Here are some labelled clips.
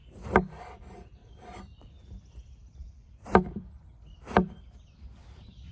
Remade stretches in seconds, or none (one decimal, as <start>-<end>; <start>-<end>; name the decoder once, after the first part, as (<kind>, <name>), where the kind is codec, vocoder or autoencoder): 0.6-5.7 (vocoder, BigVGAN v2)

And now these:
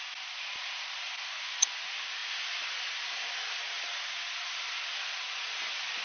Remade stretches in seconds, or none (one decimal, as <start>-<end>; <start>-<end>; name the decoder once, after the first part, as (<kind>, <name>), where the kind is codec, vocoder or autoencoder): none

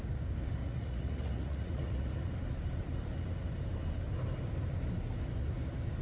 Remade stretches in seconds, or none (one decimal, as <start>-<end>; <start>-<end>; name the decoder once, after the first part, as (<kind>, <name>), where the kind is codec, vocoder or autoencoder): 0.6-2.1 (vocoder, Vocos)

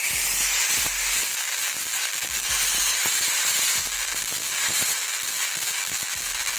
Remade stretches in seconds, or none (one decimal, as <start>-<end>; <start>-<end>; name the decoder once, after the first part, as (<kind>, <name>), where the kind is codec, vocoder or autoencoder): 1.2-2.5 (vocoder, BigVGAN v2); 3.8-4.6; 5.0-6.6

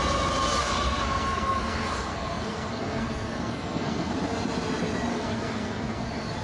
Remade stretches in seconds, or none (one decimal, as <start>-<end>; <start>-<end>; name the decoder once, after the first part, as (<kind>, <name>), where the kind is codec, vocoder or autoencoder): 0.6-4.1 (codec, SNAC); 5.1-6.0

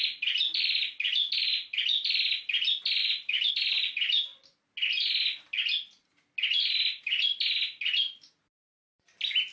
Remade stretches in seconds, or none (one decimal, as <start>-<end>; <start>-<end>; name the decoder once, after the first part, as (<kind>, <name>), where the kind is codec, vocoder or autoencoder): none